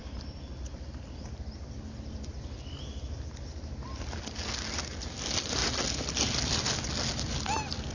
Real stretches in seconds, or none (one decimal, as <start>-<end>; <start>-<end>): 0.0-7.9

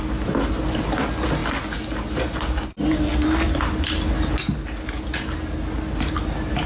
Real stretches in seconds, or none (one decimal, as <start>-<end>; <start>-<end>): 0.0-6.7